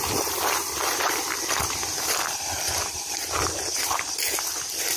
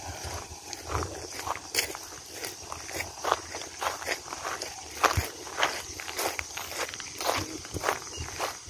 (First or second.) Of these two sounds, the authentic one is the first